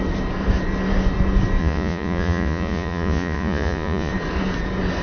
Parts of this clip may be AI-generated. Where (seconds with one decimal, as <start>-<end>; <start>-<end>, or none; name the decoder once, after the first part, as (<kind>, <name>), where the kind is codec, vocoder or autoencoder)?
1.6-4.1 (vocoder, Vocos)